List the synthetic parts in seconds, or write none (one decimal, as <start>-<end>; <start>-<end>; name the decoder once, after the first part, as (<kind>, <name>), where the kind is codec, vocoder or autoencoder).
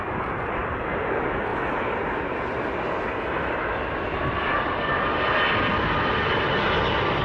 0.6-1.1 (vocoder, BigVGAN v2)